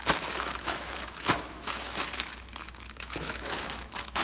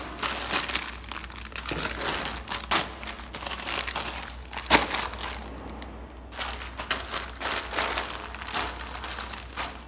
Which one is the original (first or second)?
second